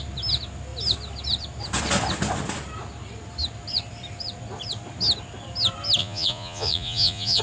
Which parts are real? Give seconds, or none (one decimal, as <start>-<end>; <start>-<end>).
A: 0.0-6.0